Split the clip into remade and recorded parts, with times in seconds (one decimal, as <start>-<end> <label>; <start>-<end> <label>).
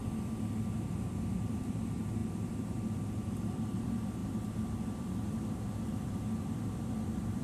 0.0-1.1 recorded; 1.1-4.2 remade; 4.2-6.1 recorded; 6.1-7.4 remade